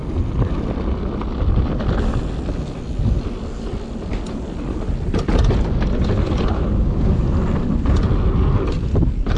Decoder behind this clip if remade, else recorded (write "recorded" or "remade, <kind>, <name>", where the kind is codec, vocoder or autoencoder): recorded